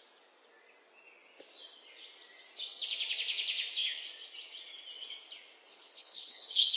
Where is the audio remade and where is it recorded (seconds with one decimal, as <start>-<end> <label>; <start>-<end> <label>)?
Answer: 0.0-5.7 recorded; 5.7-6.8 remade